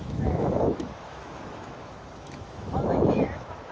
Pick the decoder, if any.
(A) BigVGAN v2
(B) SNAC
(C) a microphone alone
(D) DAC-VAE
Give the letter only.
D